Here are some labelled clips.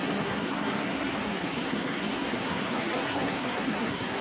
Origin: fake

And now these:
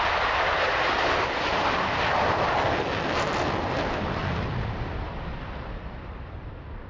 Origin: fake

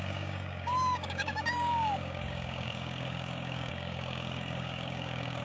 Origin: fake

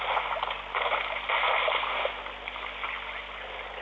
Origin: real